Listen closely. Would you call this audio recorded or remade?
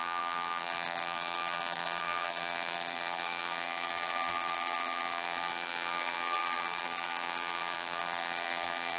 remade